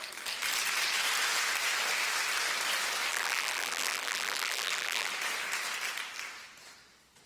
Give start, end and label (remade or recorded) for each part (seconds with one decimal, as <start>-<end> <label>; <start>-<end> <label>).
0.0-3.1 recorded; 3.1-5.1 remade; 5.1-7.3 recorded